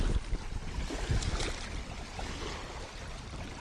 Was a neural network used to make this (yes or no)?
no